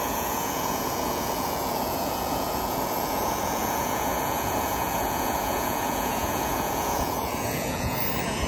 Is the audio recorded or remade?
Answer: remade